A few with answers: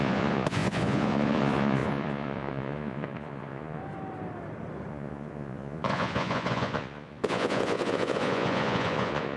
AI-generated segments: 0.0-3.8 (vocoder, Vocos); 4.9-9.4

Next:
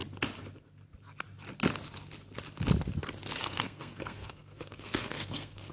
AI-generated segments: 3.4-5.7 (codec, SNAC)